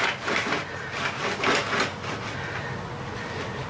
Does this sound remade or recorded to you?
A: recorded